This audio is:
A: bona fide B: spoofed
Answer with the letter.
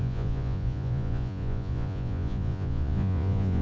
B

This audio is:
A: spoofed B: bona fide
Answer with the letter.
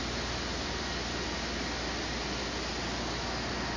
B